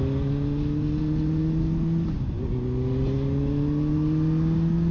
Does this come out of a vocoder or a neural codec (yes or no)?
no